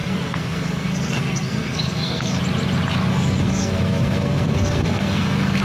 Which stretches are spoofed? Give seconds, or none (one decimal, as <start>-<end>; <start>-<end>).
0.0-2.4; 3.1-5.6